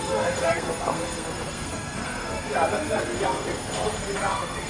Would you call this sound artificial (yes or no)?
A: yes